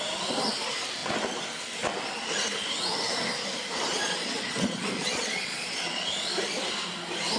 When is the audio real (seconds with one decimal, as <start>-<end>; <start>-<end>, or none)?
0.0-3.9; 6.3-7.4